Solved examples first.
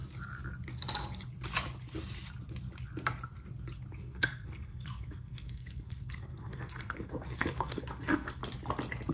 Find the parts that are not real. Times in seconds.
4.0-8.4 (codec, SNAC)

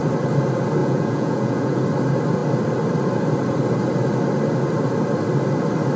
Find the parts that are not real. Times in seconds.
0.8-1.8 (vocoder, Vocos)

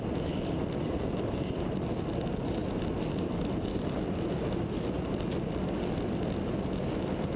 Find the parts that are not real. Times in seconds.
none

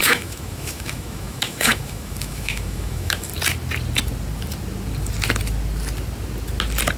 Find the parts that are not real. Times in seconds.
0.0-3.3 (autoencoder, DAC-VAE)

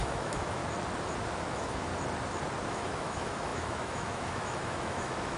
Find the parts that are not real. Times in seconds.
0.0-0.6 (autoencoder, DAC-VAE); 1.4-1.9; 2.7-5.4

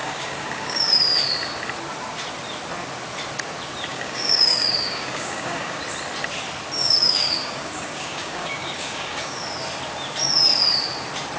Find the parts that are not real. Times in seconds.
0.0-1.0 (codec, DAC); 3.9-5.8; 6.8-9.4